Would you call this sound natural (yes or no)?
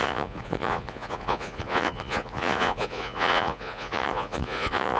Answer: no